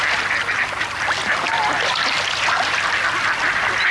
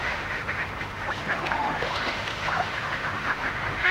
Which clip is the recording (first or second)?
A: first